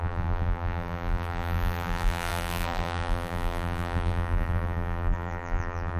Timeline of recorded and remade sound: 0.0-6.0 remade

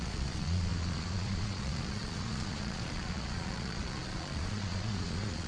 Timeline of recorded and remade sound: 0.0-5.5 remade